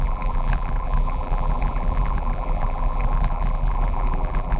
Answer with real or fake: fake